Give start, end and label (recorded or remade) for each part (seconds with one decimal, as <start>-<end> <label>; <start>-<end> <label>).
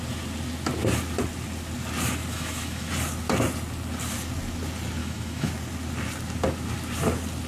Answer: 0.0-2.3 recorded; 2.3-2.9 remade; 2.9-5.0 recorded; 5.0-5.5 remade; 5.5-7.5 recorded